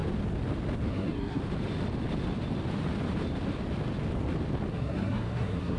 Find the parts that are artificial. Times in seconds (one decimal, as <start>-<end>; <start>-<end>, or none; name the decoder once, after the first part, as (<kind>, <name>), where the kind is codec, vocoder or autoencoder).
0.9-1.4 (codec, SNAC); 4.7-5.8